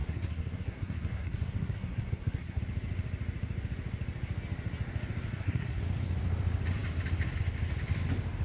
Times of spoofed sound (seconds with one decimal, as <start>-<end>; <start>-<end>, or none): 0.0-2.6; 5.3-5.8